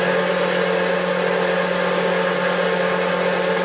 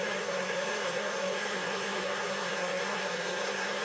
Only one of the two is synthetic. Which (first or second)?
second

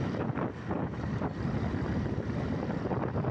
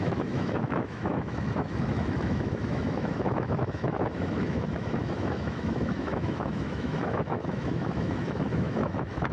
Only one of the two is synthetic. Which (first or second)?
second